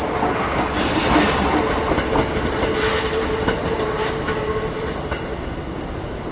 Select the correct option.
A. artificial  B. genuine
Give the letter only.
B